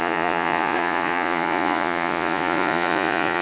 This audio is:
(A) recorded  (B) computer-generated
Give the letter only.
B